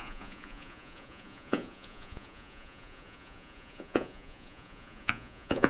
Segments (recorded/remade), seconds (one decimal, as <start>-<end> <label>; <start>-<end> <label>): 0.0-5.7 remade